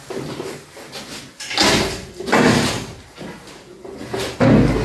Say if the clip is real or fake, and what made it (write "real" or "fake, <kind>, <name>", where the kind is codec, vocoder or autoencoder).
real